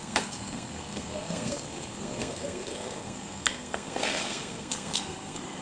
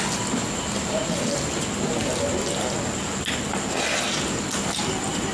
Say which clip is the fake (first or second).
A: first